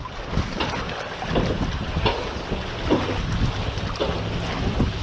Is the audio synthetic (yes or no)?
no